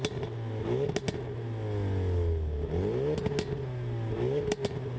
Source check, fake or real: real